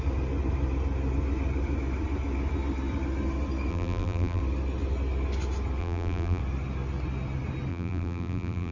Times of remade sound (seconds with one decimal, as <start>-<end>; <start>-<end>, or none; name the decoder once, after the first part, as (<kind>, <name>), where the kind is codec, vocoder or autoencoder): 3.7-4.4 (vocoder, BigVGAN v2); 5.8-6.4; 7.7-8.7